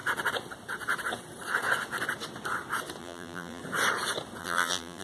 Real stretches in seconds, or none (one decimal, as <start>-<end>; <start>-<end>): 0.0-3.0; 3.6-4.4